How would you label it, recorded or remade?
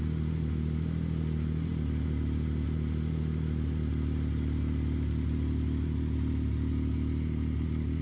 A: recorded